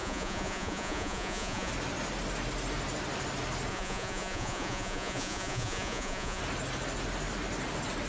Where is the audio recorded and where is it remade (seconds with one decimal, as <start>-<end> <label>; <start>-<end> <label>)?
0.0-1.7 remade; 1.7-3.7 recorded; 3.7-6.4 remade; 6.4-8.1 recorded